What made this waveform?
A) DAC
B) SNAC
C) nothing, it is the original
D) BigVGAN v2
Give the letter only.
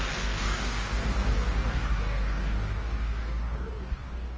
A